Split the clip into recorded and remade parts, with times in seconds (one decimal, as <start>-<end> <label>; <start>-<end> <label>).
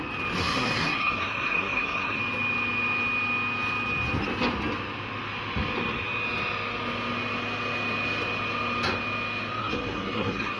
0.0-0.4 recorded; 0.4-2.2 remade; 2.2-9.6 recorded; 9.6-10.6 remade